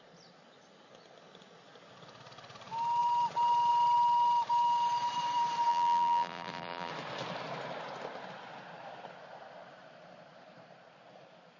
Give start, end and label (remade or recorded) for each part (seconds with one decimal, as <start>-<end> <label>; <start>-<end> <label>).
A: 0.0-5.7 recorded; 5.7-6.9 remade; 6.9-11.6 recorded